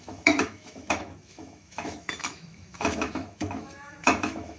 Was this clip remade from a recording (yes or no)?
yes